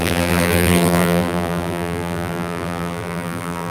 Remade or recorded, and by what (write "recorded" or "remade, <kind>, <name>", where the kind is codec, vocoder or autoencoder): remade, vocoder, BigVGAN v2